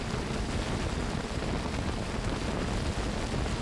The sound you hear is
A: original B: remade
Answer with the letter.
A